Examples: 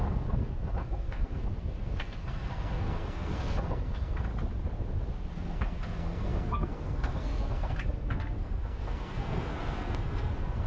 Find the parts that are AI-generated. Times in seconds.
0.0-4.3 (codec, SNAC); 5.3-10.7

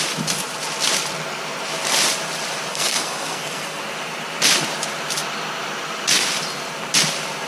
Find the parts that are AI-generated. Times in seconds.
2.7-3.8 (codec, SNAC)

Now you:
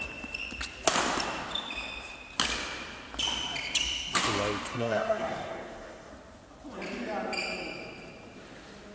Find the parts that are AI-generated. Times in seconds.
4.7-6.1 (codec, SNAC)

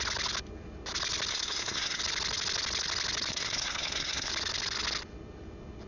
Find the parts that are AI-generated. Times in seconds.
1.3-2.0 (codec, SNAC); 3.3-4.3

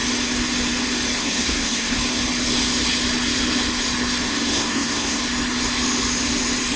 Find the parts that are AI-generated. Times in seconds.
1.2-2.0 (codec, SNAC); 4.3-5.2

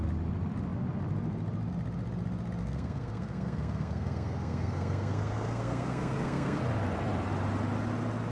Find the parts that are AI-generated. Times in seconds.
2.6-6.6 (codec, SNAC)